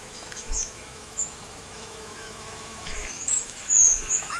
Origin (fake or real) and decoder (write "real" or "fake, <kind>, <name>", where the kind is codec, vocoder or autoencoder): fake, autoencoder, DAC-VAE